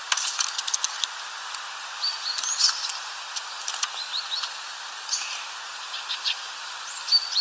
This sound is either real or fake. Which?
real